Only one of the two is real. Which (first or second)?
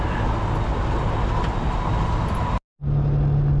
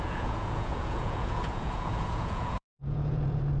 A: first